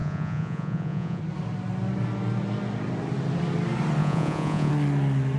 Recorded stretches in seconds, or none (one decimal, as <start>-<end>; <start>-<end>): 1.2-4.0; 4.7-5.4